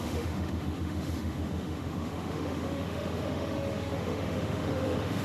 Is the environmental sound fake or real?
fake